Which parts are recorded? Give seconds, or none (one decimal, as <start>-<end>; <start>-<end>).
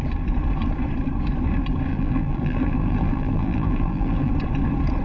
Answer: 0.0-1.9; 4.3-5.0